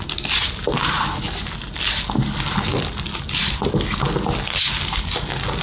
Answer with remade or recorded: recorded